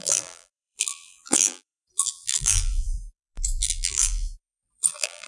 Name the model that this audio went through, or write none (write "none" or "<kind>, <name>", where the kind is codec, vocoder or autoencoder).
vocoder, BigVGAN v2